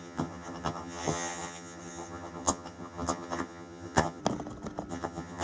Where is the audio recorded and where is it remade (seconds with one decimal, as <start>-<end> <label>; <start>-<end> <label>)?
0.0-4.2 remade; 4.2-4.9 recorded; 4.9-5.4 remade